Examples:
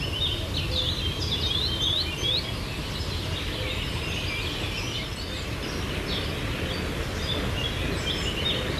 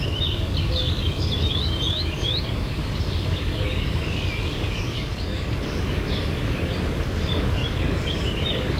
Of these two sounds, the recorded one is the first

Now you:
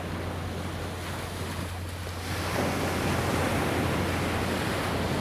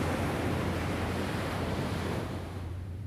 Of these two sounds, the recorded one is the first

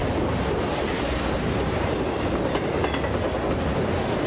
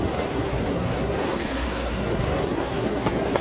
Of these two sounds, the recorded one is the first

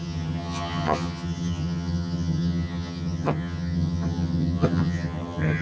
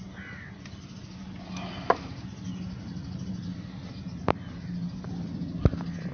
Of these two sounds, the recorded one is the second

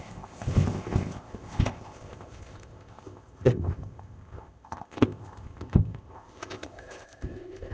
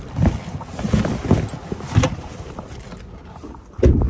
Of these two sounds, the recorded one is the second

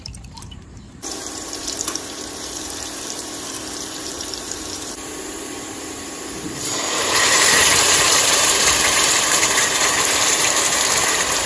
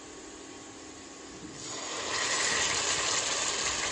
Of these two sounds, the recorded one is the second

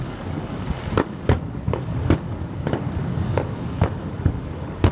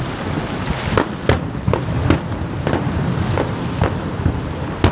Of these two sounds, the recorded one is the second